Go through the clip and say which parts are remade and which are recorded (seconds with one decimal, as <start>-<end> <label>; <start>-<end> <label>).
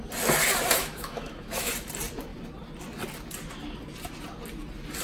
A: 0.0-0.8 recorded; 0.8-1.7 remade; 1.7-5.0 recorded